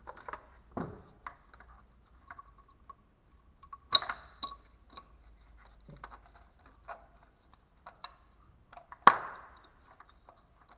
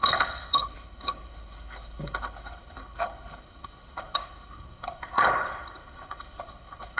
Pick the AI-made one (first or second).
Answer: second